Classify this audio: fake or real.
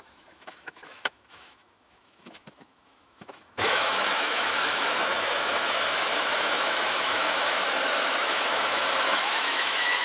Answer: fake